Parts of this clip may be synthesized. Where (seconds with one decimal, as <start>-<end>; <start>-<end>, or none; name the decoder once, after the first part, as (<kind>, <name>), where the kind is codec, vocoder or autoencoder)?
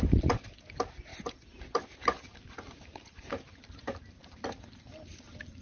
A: none